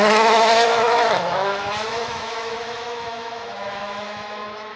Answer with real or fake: fake